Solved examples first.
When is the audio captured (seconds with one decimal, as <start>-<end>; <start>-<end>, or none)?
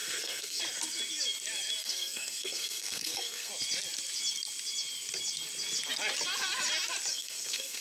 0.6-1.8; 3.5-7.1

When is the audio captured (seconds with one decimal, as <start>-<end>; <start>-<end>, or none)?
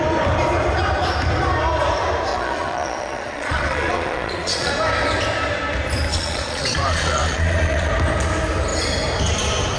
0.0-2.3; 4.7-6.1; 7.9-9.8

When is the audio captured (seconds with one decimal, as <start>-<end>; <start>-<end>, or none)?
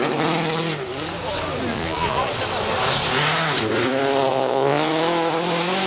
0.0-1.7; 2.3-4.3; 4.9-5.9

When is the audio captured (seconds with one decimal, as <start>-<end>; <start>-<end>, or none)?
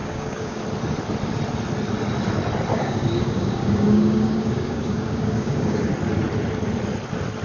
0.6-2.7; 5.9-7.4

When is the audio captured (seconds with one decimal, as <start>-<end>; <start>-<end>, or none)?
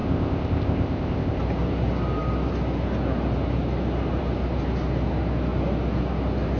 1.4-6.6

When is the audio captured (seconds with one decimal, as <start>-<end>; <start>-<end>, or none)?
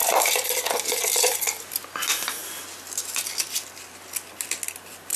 0.0-5.2